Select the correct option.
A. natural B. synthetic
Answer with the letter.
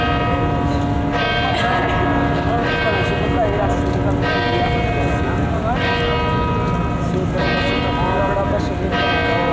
A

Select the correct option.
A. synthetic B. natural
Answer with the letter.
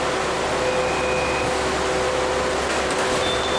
B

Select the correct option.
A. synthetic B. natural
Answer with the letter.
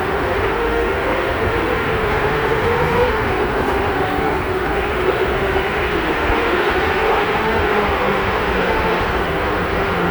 A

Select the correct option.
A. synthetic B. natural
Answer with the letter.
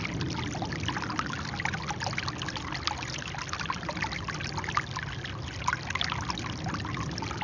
B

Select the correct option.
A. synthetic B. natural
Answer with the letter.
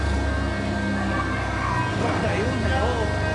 B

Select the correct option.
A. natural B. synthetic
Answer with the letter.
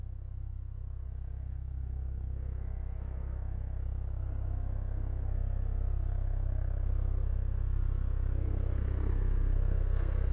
B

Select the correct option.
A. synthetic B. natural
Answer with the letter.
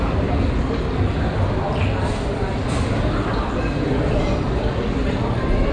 B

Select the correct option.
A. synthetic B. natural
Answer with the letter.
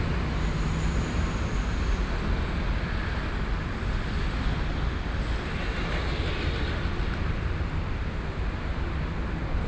B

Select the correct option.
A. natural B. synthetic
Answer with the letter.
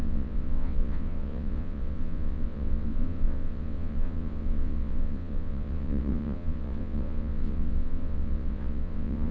B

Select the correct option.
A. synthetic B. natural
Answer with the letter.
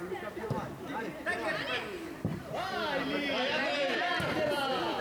A